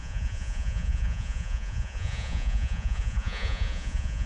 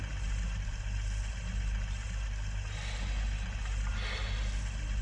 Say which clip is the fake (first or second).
first